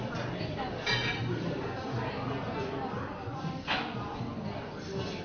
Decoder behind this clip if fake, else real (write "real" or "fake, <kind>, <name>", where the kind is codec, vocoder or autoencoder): real